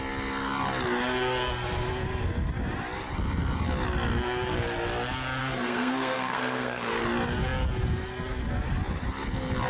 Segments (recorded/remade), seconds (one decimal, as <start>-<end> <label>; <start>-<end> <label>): 0.0-5.4 recorded; 5.4-7.0 remade; 7.0-9.7 recorded